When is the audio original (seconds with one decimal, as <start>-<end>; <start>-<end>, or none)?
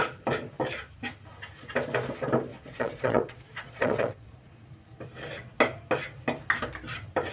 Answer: 0.0-2.5; 4.7-7.3